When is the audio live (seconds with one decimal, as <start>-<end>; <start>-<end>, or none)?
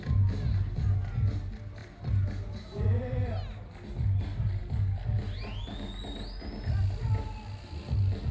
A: 0.0-8.3